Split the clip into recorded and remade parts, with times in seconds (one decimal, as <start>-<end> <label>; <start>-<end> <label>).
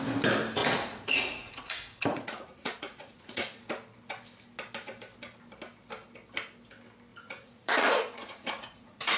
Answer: 0.0-0.6 recorded; 0.6-3.6 remade; 3.6-7.1 recorded; 7.1-9.2 remade